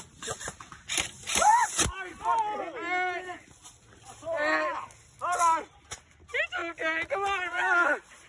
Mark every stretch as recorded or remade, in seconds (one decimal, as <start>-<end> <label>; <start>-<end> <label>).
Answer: 0.0-8.3 recorded